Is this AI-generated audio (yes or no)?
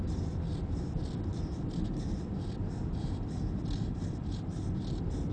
yes